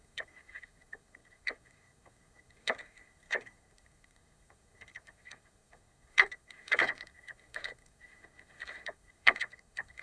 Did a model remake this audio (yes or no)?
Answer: yes